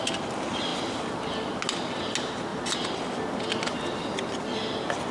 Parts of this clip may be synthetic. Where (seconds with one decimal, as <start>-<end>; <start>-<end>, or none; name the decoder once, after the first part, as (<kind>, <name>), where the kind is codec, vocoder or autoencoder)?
none